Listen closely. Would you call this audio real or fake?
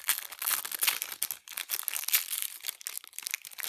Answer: real